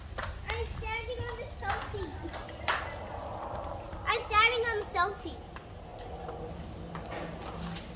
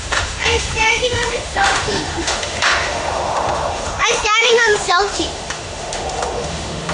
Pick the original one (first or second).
first